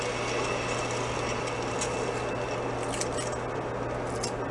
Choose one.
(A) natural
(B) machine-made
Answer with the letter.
A